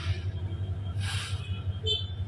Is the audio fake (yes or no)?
no